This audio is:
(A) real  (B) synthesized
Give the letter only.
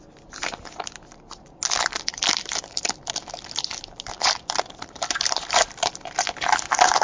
A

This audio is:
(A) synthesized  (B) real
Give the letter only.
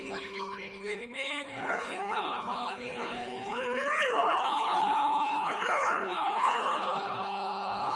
A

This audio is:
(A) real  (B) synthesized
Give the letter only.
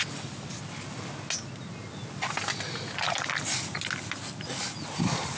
A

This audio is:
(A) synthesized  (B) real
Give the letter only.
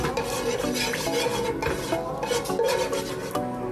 B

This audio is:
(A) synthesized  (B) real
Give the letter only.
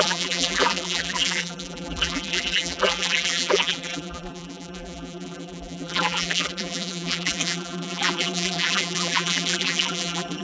A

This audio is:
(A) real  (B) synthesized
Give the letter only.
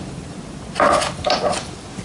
B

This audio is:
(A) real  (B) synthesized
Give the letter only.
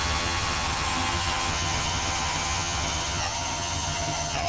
B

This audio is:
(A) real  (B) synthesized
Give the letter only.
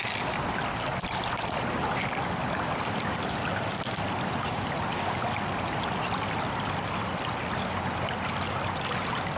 A